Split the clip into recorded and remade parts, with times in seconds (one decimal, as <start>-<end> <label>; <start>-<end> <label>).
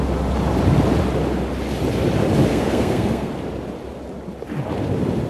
0.0-2.5 recorded; 2.5-3.3 remade; 3.3-5.3 recorded